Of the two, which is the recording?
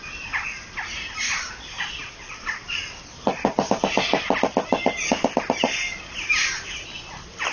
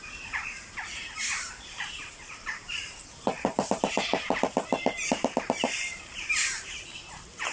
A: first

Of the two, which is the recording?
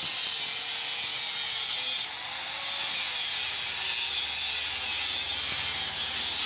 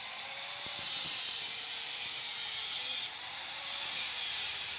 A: first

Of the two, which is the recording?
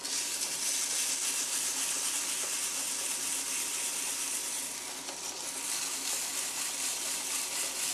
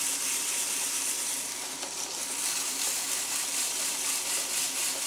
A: first